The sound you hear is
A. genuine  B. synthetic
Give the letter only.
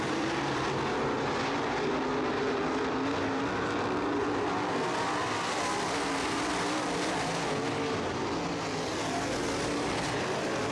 A